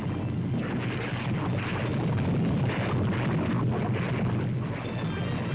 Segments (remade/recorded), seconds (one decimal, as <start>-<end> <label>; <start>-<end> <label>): 0.0-5.5 recorded